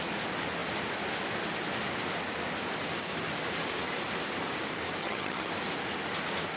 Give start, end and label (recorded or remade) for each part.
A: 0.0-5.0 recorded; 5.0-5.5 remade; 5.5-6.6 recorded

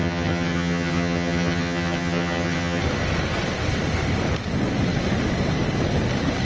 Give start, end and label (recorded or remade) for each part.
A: 0.0-2.8 remade; 2.8-6.4 recorded